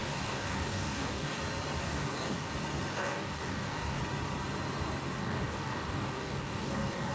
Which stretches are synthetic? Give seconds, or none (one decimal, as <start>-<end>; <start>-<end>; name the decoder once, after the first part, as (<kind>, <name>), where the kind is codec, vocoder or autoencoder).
0.0-1.4 (codec, DAC); 1.8-2.5; 2.9-4.0; 5.2-7.1

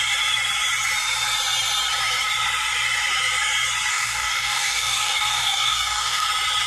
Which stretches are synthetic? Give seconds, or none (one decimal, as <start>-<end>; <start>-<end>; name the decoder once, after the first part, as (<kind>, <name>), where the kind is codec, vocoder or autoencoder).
3.9-6.3 (codec, DAC)

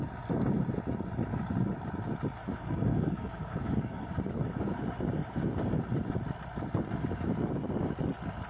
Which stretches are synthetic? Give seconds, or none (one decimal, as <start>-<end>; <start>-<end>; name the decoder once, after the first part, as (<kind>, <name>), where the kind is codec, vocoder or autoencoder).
2.4-5.8 (codec, DAC)

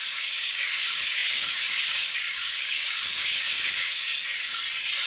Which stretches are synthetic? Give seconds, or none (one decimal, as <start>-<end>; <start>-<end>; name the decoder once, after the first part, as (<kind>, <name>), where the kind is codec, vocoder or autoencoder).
0.0-4.1 (codec, DAC)